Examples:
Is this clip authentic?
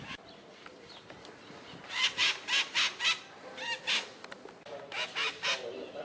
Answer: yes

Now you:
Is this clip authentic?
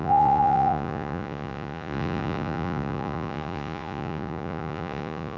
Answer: no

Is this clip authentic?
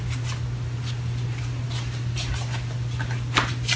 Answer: yes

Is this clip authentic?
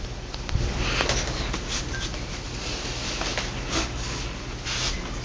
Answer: yes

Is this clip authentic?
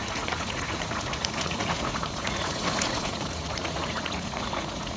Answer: no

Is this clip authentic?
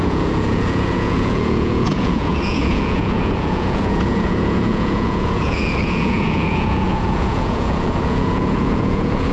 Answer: no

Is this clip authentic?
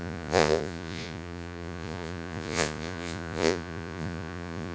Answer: no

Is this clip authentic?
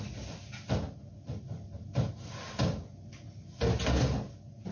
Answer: yes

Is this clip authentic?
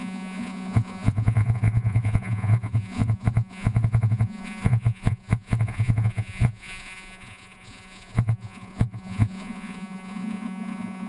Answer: no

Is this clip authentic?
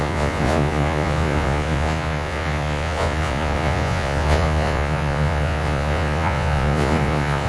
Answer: no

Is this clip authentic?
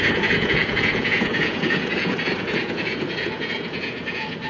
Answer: no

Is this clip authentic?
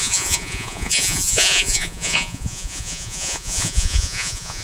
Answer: no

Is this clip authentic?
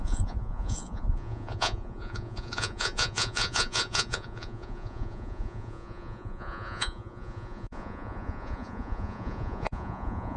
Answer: no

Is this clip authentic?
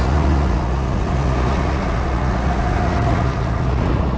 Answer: no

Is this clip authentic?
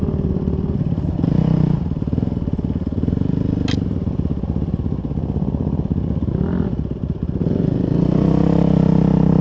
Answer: yes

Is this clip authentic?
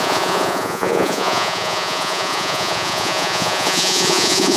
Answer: no